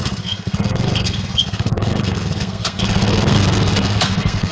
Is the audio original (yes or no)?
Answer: no